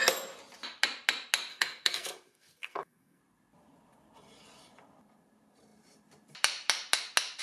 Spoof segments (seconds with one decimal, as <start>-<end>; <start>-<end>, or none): 1.5-3.2